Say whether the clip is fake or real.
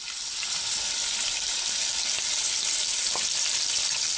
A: real